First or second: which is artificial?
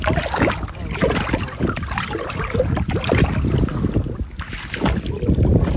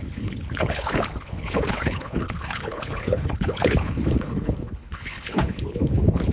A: second